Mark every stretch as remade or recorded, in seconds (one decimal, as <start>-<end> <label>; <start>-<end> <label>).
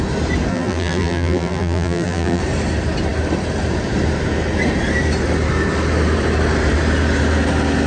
0.0-0.5 recorded; 0.5-2.4 remade; 2.4-7.9 recorded